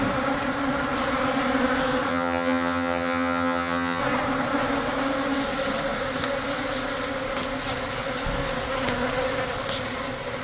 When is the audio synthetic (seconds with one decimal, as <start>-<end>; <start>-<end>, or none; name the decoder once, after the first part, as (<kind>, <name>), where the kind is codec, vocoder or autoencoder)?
2.1-4.0 (vocoder, HiFi-GAN)